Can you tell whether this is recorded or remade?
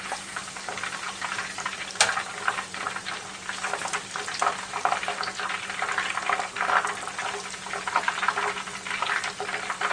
recorded